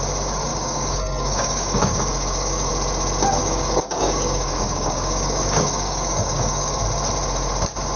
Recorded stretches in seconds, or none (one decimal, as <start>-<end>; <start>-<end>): 0.0-0.5; 2.7-3.4; 6.8-8.0